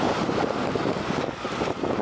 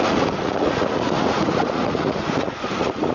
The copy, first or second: second